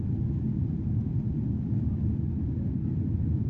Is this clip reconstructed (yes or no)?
no